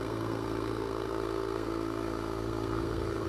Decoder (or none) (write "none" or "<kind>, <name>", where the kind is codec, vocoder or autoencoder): codec, SNAC